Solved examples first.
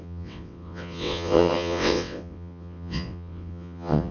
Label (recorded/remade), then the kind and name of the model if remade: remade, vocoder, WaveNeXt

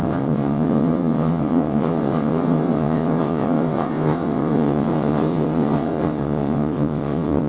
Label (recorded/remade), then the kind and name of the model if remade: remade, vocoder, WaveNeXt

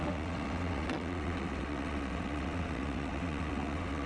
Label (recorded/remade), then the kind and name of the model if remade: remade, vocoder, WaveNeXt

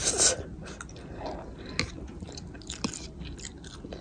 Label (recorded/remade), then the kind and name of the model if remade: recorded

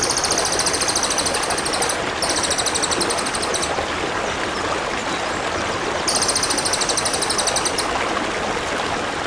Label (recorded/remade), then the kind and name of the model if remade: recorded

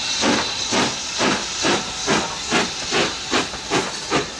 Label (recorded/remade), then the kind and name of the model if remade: recorded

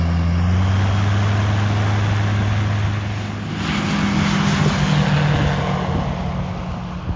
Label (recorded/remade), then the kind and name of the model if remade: recorded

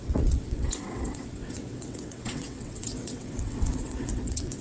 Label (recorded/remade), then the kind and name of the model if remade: remade, vocoder, WaveNeXt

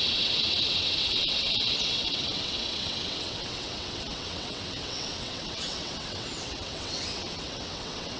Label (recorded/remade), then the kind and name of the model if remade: remade, vocoder, WaveNeXt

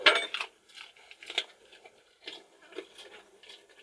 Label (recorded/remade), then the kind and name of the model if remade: recorded